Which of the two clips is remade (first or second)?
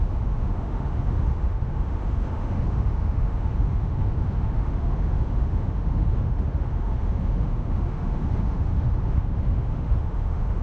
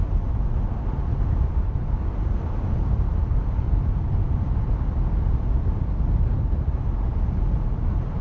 first